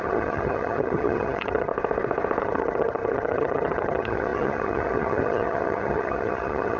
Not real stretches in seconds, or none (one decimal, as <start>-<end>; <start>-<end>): 0.0-1.7; 2.4-6.8